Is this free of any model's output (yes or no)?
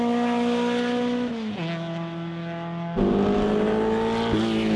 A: yes